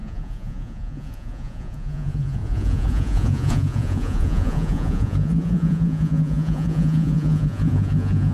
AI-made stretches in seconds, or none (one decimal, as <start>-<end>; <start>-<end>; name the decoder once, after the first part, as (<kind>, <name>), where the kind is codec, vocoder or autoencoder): 0.0-8.3 (vocoder, Vocos)